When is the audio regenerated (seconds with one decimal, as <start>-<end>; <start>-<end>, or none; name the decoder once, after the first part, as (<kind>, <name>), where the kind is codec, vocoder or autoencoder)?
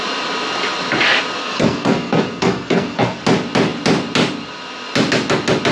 1.4-3.2 (codec, SNAC)